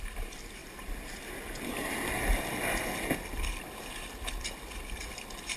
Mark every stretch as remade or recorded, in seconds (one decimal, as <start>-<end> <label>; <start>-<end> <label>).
0.0-5.6 recorded